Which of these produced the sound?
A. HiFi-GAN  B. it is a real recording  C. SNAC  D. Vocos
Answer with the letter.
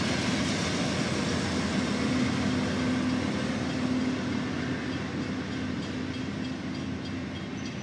B